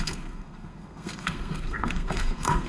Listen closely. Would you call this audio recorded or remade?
remade